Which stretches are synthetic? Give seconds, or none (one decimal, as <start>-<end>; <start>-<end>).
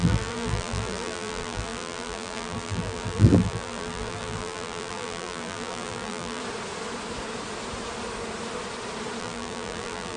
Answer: 0.0-6.4; 9.2-10.2